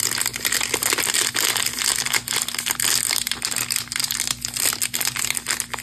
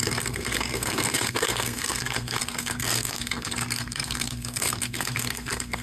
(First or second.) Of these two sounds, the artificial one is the second